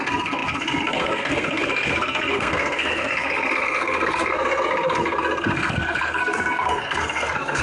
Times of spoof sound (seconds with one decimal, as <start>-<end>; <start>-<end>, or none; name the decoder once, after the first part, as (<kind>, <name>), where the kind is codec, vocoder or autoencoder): 0.0-7.6 (codec, SNAC)